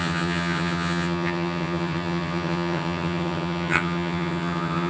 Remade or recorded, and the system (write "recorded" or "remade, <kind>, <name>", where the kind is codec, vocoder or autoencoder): remade, vocoder, HiFi-GAN